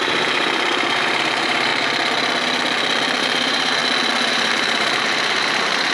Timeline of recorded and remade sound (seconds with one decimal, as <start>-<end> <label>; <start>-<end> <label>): 0.0-1.7 remade; 1.7-3.2 recorded; 3.2-3.8 remade; 3.8-4.3 recorded; 4.3-5.9 remade